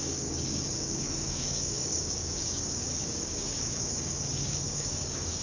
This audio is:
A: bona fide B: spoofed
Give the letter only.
B